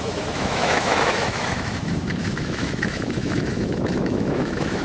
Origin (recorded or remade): remade